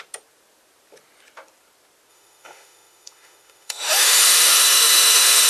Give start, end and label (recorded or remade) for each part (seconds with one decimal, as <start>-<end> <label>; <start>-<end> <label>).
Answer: 0.0-2.1 recorded; 2.1-5.5 remade